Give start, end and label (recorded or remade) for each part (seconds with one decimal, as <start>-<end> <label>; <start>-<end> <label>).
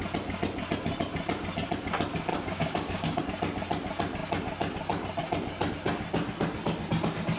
0.0-2.3 recorded; 2.3-3.2 remade; 3.2-7.4 recorded